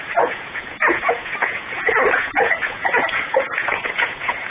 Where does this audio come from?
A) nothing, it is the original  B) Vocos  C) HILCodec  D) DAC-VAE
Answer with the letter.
B